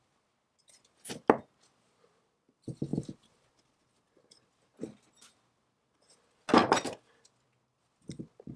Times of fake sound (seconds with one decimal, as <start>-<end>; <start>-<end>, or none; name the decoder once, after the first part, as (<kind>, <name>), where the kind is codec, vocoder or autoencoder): none